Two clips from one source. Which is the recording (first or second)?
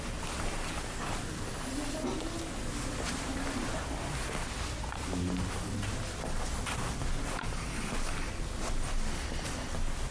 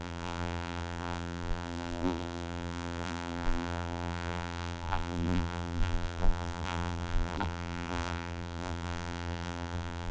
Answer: first